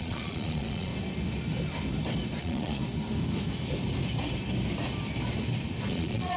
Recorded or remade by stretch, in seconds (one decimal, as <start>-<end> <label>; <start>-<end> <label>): 0.0-0.9 remade; 0.9-2.4 recorded; 2.4-2.8 remade; 2.8-5.9 recorded; 5.9-6.4 remade